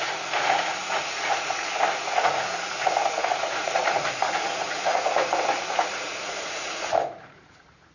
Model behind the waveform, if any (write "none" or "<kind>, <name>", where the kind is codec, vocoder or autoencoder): vocoder, Vocos